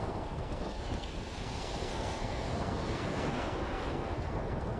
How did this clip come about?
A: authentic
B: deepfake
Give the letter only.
B